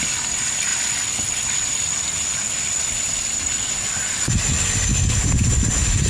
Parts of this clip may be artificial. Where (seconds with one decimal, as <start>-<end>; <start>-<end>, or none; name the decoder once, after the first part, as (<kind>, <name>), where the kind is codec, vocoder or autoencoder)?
none